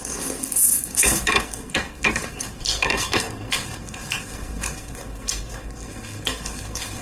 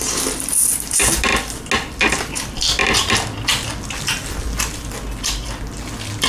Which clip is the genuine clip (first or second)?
second